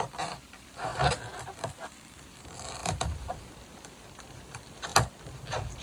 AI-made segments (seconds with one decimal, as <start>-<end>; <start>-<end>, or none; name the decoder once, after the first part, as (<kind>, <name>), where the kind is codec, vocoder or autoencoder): 0.0-4.9 (vocoder, BigVGAN v2)